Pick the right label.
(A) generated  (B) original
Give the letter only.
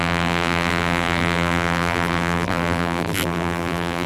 A